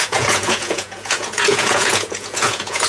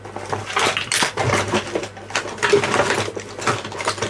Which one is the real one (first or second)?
second